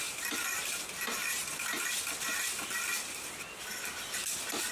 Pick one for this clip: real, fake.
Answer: real